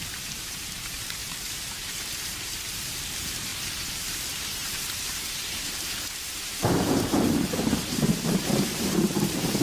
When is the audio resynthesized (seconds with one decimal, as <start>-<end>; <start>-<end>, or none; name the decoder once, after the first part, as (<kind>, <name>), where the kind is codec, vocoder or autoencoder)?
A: 0.0-9.6 (vocoder, BigVGAN v2)